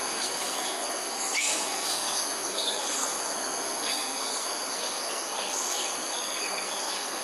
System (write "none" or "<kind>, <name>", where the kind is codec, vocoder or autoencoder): codec, SNAC